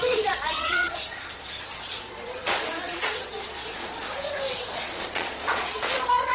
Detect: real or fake fake